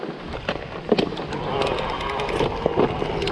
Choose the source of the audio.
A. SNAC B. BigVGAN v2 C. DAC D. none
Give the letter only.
D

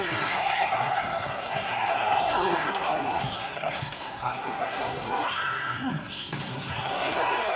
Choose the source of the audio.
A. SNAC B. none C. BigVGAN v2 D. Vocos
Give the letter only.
A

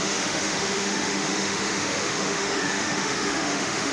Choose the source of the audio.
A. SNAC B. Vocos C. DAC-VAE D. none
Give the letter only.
C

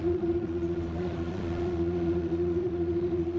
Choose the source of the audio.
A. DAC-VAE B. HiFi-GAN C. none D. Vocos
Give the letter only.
D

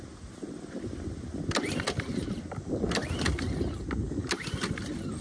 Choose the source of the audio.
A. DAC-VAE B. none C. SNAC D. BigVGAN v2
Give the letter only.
B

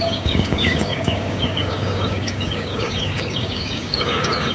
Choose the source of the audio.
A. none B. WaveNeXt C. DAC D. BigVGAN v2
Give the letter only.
C